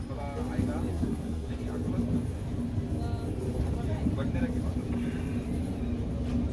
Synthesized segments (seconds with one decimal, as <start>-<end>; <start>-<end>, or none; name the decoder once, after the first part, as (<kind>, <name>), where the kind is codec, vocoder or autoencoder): 0.9-1.5 (codec, SNAC)

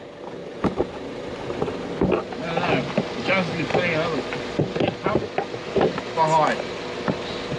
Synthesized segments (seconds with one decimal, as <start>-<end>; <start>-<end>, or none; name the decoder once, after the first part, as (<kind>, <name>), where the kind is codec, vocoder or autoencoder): none

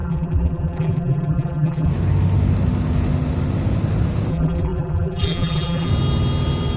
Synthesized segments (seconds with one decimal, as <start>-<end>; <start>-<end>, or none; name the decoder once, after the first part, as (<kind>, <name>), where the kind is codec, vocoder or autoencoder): 0.0-1.9 (vocoder, BigVGAN v2); 4.3-5.9

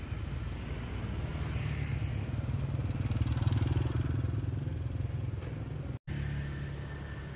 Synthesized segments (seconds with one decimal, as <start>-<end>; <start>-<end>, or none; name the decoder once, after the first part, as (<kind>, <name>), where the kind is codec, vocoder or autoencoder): none

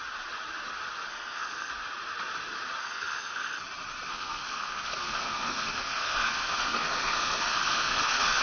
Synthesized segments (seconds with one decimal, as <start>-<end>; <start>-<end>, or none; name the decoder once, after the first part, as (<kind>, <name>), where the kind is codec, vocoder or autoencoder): 1.1-1.7 (codec, SNAC); 2.8-3.6; 4.1-8.4